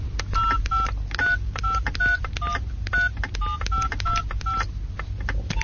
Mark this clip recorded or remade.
recorded